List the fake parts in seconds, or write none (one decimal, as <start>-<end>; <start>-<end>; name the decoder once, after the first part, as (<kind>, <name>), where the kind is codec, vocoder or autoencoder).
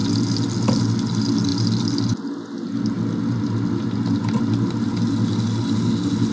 none